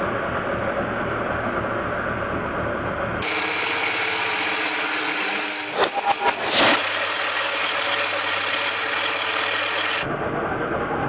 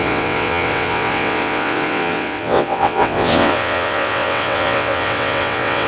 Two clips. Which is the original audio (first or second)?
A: first